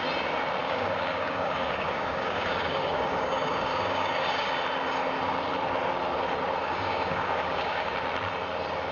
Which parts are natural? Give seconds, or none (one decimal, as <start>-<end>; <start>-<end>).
0.0-0.6; 4.5-6.6; 7.9-8.9